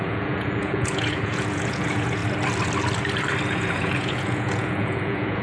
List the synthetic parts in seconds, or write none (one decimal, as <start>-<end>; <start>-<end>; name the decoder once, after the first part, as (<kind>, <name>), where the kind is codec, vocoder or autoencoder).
0.0-2.2 (vocoder, Vocos); 3.5-5.4